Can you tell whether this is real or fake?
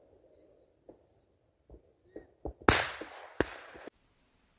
real